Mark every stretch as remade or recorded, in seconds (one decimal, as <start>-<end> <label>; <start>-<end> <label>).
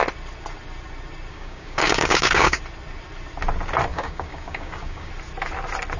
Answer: 0.0-1.3 recorded; 1.3-2.6 remade; 2.6-3.9 recorded; 3.9-5.1 remade; 5.1-6.0 recorded